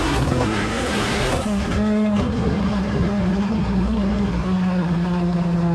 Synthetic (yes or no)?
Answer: yes